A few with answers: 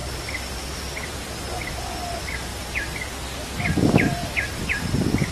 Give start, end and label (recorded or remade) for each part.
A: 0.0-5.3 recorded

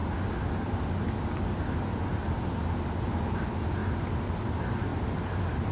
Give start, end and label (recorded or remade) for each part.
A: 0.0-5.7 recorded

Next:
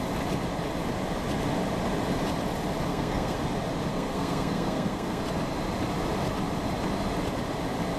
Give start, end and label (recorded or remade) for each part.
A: 0.0-2.9 recorded; 2.9-3.4 remade; 3.4-3.9 recorded; 3.9-5.2 remade; 5.2-8.0 recorded

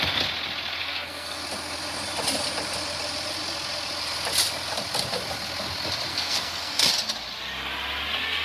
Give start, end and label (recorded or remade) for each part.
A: 0.0-0.8 recorded; 0.8-1.4 remade; 1.4-6.1 recorded; 6.1-6.9 remade; 6.9-8.4 recorded